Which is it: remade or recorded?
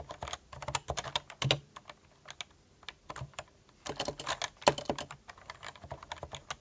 recorded